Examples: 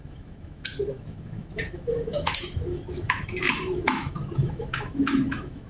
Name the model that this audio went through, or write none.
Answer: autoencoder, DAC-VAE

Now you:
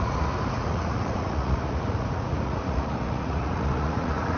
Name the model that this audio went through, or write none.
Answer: vocoder, Vocos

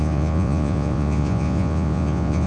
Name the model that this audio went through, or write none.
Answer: vocoder, Vocos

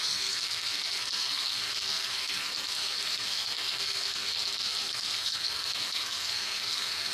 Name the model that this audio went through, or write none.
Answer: codec, SNAC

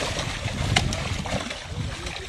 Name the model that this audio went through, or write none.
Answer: none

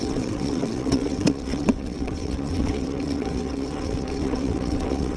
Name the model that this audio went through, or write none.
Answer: vocoder, WaveNeXt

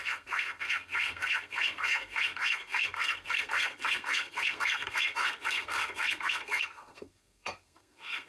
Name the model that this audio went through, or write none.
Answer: codec, SNAC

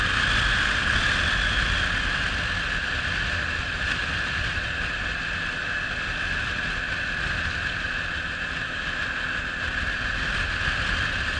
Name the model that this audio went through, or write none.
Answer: none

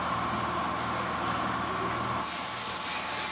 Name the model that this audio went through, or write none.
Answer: none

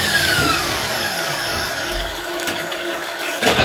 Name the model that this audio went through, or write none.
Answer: codec, DAC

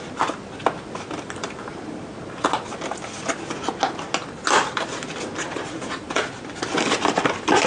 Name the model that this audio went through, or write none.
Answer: none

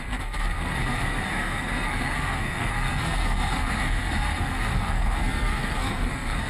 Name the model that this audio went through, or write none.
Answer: codec, SNAC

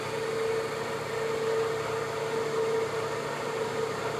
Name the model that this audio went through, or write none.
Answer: none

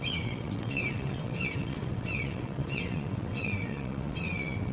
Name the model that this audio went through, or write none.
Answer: vocoder, WaveNeXt